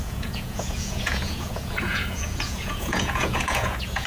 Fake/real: fake